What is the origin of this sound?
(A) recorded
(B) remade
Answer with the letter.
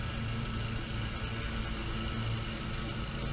A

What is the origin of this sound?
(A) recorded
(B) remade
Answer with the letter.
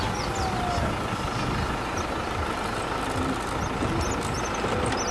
A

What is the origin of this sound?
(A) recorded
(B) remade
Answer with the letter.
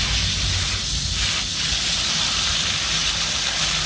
A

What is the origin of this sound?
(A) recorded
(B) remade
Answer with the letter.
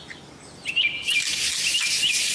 A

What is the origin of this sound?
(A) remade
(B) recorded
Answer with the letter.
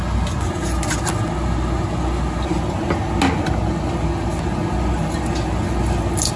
B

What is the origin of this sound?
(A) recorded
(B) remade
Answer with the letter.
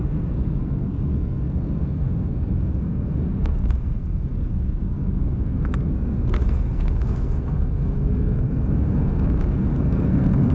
B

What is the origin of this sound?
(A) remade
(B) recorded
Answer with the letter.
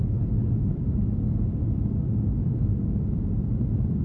A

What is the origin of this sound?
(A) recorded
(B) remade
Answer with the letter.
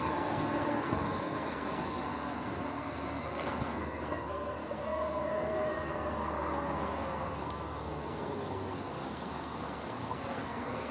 B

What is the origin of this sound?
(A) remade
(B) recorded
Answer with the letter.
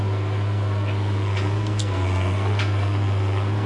A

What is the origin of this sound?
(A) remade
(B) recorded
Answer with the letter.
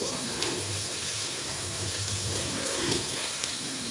A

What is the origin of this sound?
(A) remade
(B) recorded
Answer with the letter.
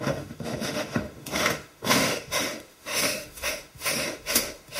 A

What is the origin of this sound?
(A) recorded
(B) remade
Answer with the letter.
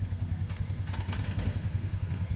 B